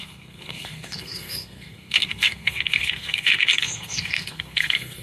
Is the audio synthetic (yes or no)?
yes